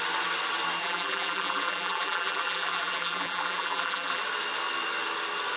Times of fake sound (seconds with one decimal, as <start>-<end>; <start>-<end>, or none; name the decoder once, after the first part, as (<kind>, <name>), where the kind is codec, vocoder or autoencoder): 0.8-4.2 (vocoder, BigVGAN v2)